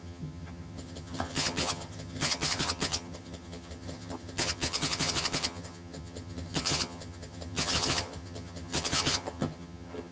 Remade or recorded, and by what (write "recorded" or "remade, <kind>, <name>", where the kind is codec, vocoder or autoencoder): remade, vocoder, HiFi-GAN